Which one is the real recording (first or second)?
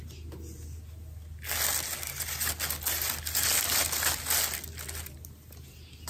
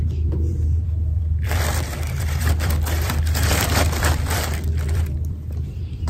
first